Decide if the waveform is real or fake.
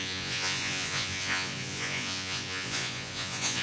fake